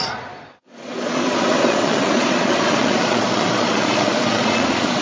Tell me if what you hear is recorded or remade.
remade